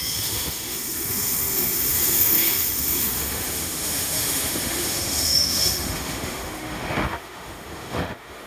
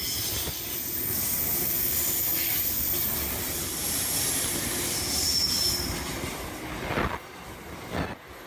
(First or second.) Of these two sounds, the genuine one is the second